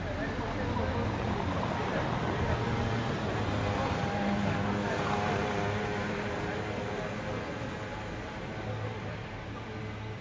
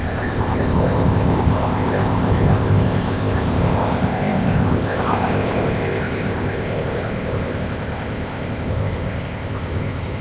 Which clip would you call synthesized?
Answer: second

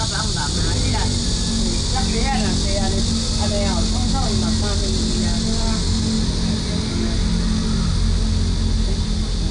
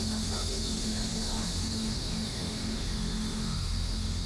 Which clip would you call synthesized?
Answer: second